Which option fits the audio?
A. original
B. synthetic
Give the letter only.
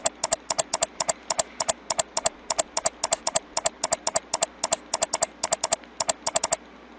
A